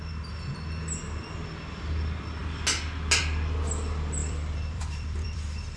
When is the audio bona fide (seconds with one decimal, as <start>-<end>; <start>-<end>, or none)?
0.0-4.2